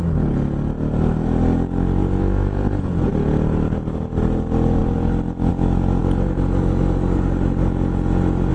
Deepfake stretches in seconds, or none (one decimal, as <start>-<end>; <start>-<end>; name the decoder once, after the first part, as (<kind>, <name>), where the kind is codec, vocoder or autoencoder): none